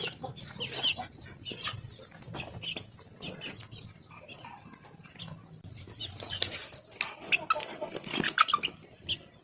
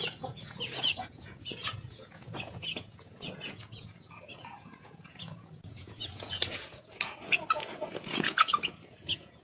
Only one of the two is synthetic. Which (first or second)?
second